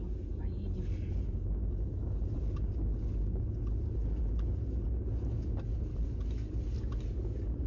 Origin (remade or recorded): recorded